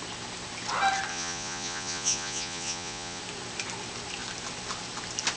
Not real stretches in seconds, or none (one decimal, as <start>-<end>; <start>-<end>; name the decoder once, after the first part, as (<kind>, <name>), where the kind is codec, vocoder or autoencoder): 1.1-3.2 (vocoder, Vocos)